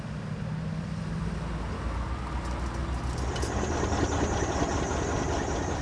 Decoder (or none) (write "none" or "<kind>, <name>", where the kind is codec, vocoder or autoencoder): none